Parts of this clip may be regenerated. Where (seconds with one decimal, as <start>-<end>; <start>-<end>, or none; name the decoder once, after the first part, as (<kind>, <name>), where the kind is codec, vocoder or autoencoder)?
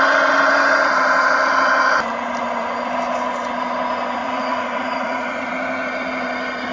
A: 4.2-5.5 (vocoder, Vocos)